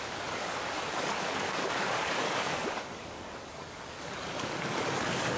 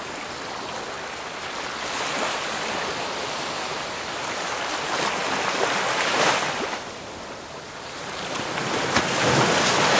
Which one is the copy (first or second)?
first